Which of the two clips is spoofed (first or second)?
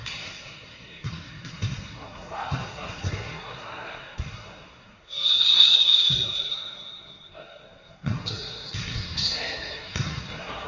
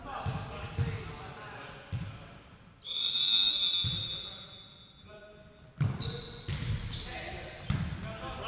first